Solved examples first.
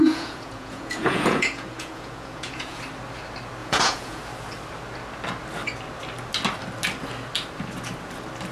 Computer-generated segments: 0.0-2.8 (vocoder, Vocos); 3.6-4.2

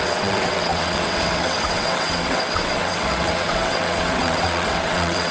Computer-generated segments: 0.0-5.3 (vocoder, WaveNeXt)

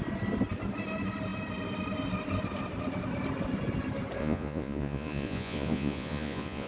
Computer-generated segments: 4.2-6.7 (vocoder, Vocos)

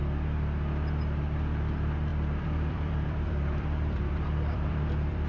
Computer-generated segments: 2.1-5.3 (vocoder, BigVGAN v2)

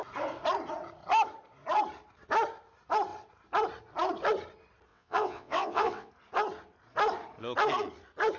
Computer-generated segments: 4.9-6.1 (vocoder, WaveNeXt)

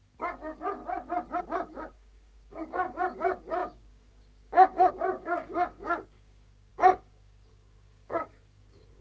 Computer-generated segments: 0.0-0.8 (codec, DAC); 1.4-9.0